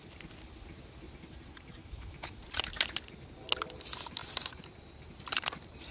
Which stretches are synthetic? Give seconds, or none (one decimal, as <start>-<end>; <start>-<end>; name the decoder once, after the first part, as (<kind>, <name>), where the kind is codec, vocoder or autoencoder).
1.8-2.4 (autoencoder, DAC-VAE)